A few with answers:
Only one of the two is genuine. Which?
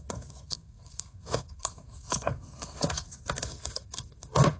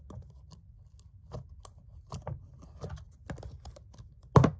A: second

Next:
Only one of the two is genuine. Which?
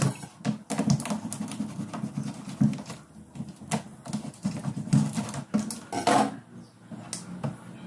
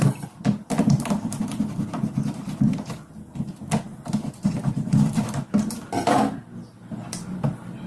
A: first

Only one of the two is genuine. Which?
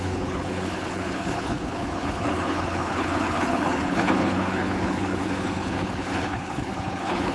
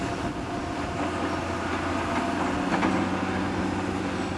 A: second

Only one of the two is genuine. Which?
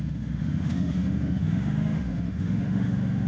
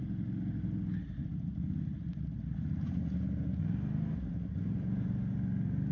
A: second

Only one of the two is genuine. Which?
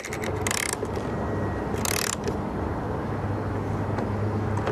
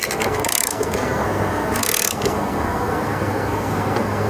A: first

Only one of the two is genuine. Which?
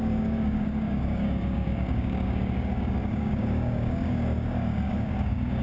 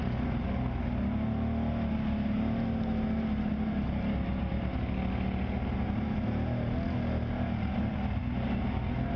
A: second